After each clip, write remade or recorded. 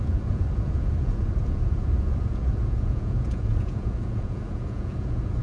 remade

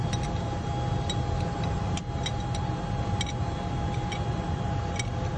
recorded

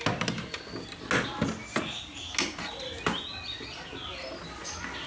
recorded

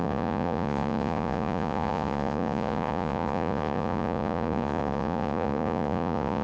remade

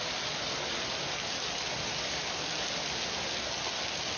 recorded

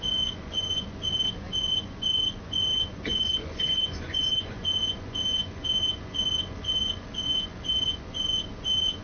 remade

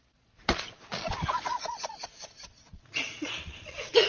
remade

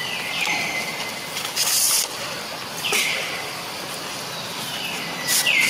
recorded